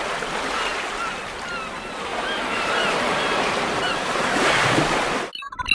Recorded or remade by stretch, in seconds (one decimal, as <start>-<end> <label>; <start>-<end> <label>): 0.0-2.1 recorded; 2.1-4.7 remade; 4.7-5.7 recorded